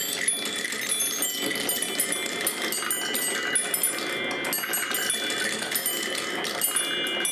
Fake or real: real